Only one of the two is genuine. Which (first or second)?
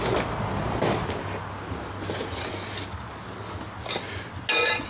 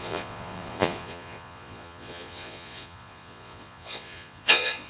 first